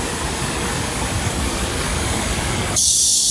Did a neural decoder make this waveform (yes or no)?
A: yes